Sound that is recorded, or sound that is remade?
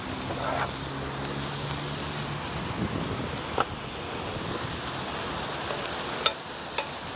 recorded